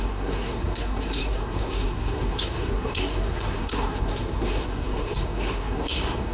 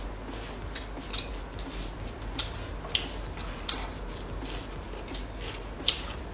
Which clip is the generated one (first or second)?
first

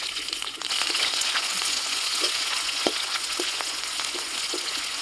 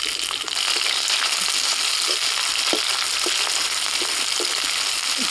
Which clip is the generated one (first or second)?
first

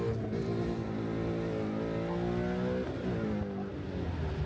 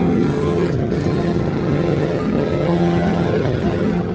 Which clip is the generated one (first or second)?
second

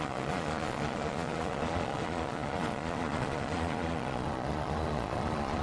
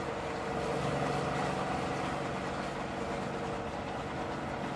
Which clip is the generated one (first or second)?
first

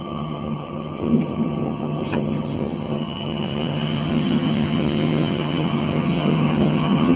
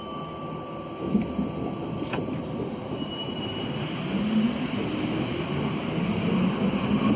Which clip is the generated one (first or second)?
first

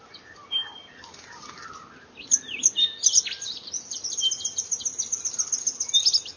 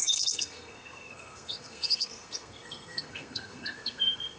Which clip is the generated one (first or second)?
second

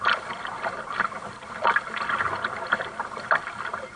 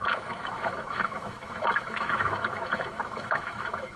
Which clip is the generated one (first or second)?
second